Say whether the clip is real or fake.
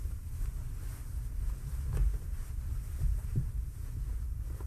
fake